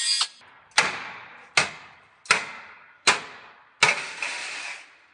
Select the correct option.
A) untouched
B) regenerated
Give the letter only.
A